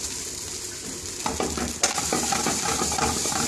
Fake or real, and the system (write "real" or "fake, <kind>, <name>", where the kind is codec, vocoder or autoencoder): real